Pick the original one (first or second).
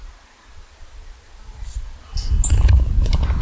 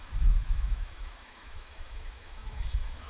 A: first